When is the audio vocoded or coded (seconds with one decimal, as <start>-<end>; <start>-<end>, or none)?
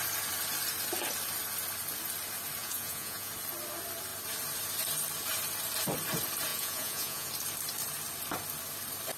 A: 2.6-3.3; 6.5-7.3